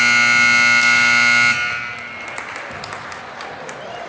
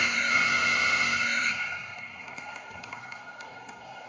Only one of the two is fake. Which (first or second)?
second